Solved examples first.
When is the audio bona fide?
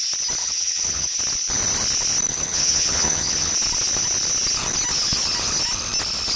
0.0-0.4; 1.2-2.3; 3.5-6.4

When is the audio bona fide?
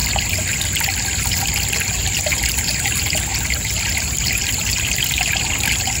0.0-3.3; 4.4-6.0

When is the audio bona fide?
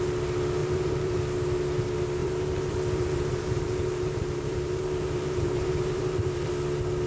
0.0-0.6; 1.1-2.2; 6.5-7.1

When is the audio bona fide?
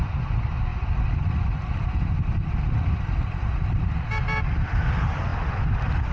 0.0-6.1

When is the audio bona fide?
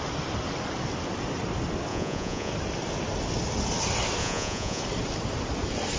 0.0-1.9; 2.5-4.2; 4.8-6.0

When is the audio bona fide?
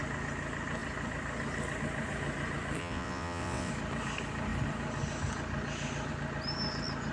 0.0-2.8; 3.7-7.1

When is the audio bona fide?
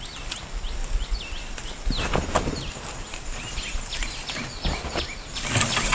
0.0-5.9